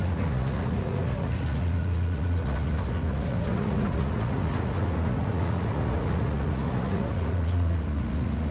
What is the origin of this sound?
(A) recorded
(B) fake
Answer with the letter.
B